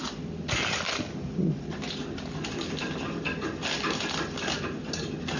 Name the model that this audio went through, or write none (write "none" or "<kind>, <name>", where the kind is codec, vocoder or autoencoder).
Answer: none